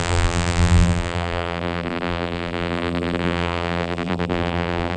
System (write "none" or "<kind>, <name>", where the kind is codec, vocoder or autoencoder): vocoder, BigVGAN v2